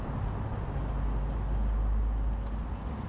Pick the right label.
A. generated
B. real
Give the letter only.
B